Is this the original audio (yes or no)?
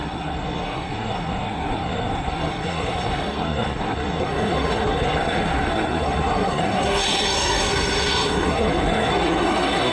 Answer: no